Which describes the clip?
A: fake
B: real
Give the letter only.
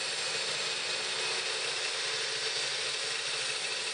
B